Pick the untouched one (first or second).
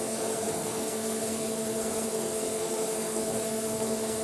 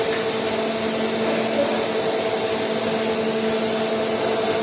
second